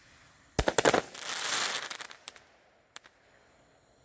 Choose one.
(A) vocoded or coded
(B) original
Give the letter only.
B